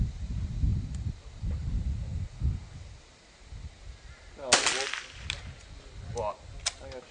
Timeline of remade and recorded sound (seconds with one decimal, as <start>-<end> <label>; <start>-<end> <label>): 0.0-7.1 recorded